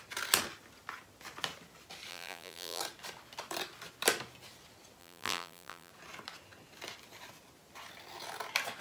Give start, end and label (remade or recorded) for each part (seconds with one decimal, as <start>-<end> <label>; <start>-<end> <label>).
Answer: 0.0-2.1 recorded; 2.1-2.8 remade; 2.8-5.0 recorded; 5.0-5.9 remade; 5.9-8.8 recorded